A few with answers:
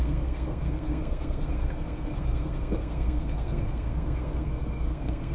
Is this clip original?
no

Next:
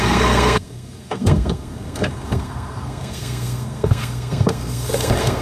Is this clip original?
no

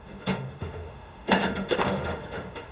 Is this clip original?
no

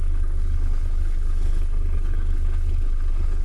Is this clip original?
no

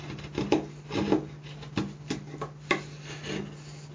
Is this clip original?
yes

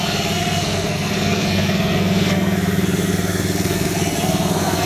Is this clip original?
no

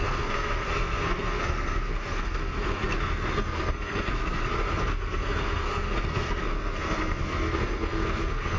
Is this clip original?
no